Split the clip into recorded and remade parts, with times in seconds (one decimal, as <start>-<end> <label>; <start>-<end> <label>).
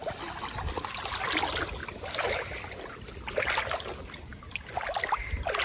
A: 0.0-5.6 recorded